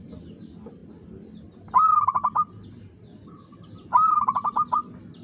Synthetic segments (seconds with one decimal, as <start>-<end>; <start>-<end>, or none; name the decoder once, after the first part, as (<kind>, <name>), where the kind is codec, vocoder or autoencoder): 0.0-5.2 (vocoder, BigVGAN v2)